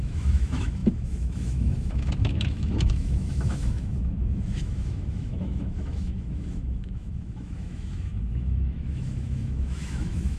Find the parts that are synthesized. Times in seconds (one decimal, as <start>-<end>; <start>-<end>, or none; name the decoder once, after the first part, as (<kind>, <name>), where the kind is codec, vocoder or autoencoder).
0.0-10.4 (autoencoder, DAC-VAE)